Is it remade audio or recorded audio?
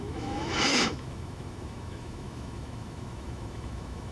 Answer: remade